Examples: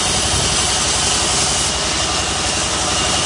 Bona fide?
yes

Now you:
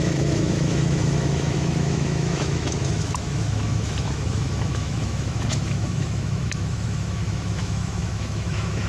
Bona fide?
no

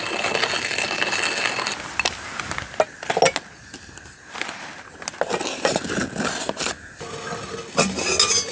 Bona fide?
yes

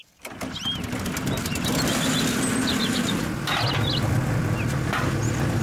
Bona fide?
yes